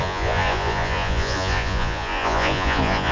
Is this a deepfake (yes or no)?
yes